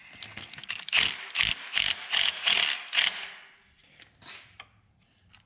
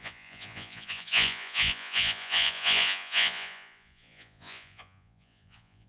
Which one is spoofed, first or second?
second